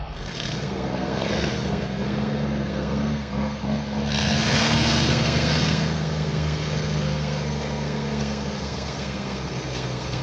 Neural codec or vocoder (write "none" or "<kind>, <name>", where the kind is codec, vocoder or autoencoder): codec, SNAC